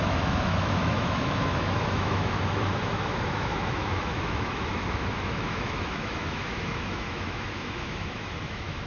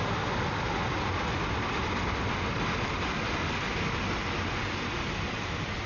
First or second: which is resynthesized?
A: first